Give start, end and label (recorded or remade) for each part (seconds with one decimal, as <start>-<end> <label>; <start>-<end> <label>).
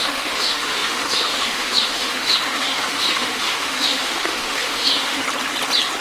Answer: 0.0-5.2 remade; 5.2-6.0 recorded